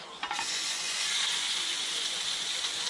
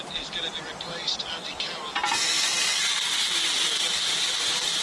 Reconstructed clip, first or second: first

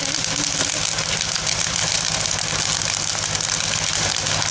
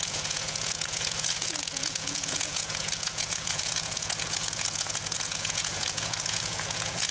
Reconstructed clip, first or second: second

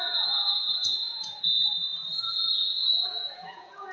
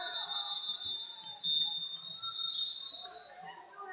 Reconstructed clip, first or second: first